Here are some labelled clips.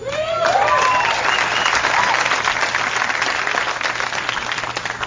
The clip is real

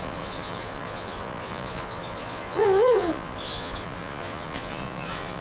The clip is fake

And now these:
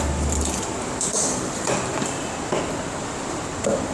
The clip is real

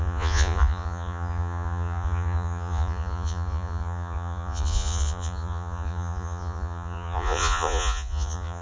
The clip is fake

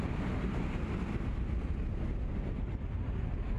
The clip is real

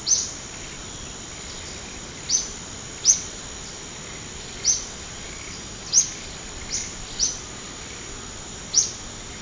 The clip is real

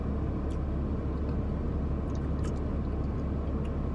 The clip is real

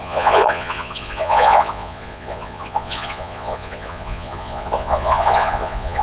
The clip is fake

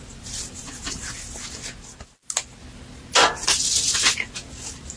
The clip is real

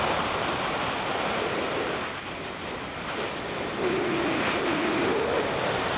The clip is real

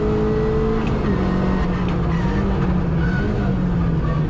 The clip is real